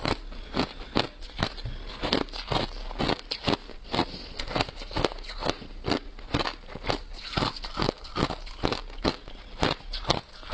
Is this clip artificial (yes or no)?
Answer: no